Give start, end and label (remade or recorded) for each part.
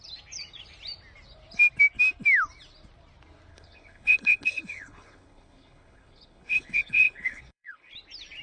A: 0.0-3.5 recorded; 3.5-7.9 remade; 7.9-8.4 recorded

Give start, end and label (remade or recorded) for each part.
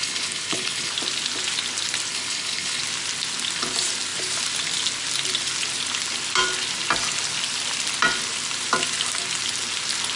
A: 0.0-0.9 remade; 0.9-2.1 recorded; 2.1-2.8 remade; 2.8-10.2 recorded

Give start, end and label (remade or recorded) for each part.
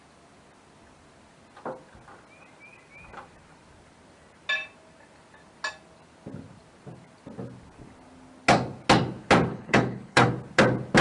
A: 0.0-9.5 recorded; 9.5-10.3 remade; 10.3-11.0 recorded